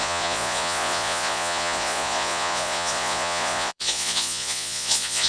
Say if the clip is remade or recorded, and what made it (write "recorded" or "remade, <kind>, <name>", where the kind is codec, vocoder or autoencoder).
remade, vocoder, Vocos